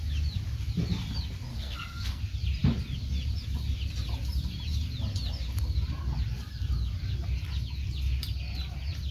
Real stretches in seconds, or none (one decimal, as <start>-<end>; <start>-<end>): 0.0-1.5; 2.2-9.1